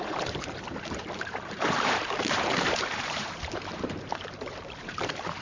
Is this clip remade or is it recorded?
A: remade